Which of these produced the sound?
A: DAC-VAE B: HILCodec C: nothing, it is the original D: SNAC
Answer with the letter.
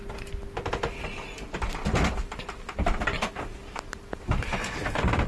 C